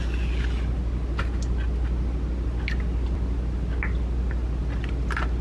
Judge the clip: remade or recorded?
recorded